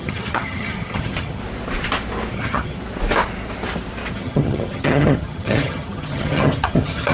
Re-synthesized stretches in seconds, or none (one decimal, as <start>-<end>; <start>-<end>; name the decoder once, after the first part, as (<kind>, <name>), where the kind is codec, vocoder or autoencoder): 0.0-1.4 (vocoder, HiFi-GAN); 2.3-2.8; 4.1-7.1